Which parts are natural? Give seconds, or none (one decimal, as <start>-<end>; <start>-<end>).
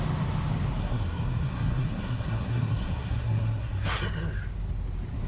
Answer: 0.0-0.8; 4.0-5.3